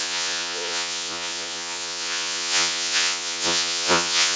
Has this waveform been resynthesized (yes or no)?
yes